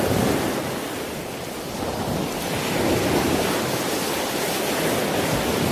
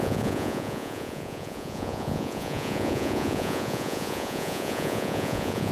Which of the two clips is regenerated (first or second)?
second